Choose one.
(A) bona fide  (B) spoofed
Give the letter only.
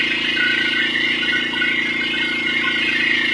A